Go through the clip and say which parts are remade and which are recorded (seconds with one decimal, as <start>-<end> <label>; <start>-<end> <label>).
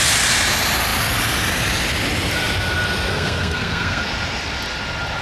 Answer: 0.0-3.1 recorded; 3.1-4.0 remade; 4.0-5.2 recorded